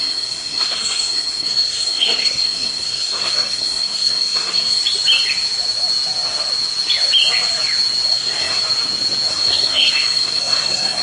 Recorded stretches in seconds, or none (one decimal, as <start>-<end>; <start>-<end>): 4.8-8.1; 8.6-9.3